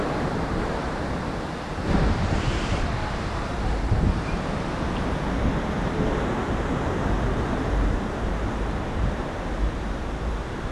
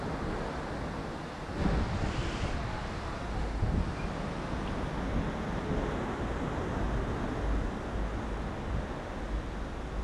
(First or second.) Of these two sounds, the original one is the second